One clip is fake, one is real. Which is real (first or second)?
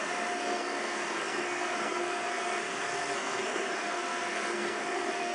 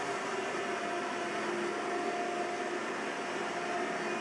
second